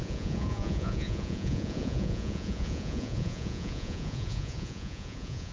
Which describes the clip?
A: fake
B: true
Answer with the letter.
A